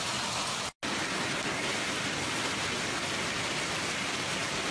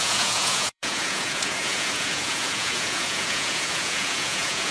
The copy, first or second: second